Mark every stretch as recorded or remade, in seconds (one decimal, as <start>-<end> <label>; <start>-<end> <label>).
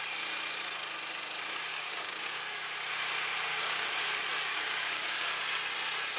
0.0-1.7 recorded; 1.7-2.4 remade; 2.4-3.5 recorded; 3.5-4.0 remade; 4.0-4.5 recorded; 4.5-5.4 remade; 5.4-6.2 recorded